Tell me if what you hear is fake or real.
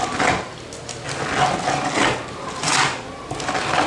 real